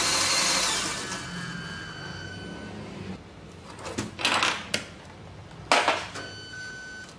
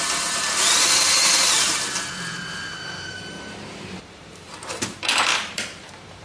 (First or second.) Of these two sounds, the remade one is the second